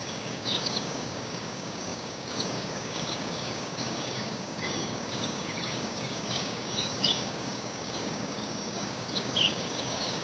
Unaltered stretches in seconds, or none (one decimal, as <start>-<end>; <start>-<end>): none

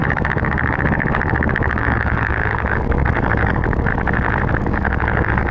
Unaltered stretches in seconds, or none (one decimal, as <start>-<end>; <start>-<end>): 3.9-4.6

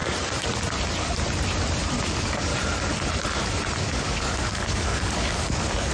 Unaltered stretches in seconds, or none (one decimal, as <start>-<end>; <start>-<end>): 0.0-2.1; 2.5-3.8

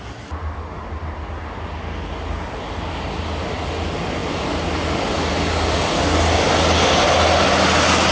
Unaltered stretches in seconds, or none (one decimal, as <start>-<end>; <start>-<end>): 0.0-8.1